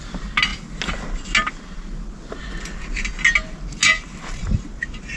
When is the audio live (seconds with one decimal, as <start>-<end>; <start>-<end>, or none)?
0.0-5.2